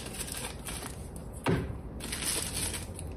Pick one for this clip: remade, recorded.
recorded